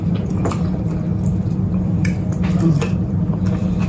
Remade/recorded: remade